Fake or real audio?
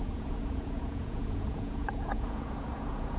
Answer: fake